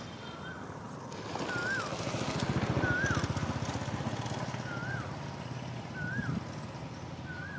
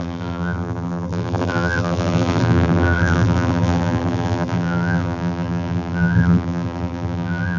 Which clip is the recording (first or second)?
first